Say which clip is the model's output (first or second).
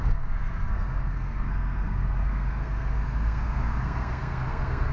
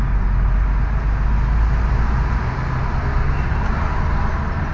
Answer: first